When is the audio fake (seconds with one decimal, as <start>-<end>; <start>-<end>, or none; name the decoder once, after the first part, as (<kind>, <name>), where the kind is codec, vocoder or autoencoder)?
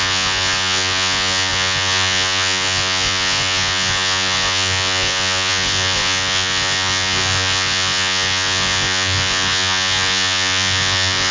0.0-11.3 (vocoder, Vocos)